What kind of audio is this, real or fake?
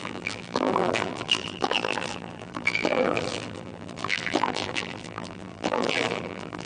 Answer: fake